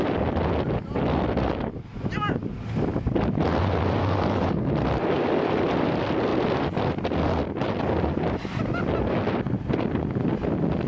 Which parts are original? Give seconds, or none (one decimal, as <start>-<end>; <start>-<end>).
0.0-4.0; 4.7-10.9